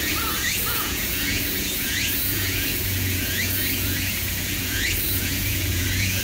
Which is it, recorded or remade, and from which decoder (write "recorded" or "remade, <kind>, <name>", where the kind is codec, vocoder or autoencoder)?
remade, vocoder, Vocos